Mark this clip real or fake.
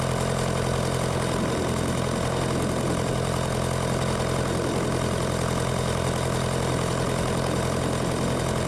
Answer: real